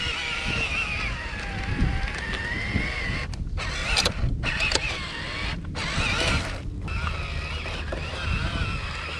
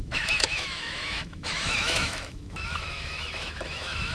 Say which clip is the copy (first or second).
second